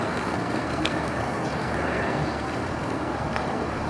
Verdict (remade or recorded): remade